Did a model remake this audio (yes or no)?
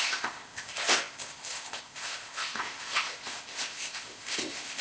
yes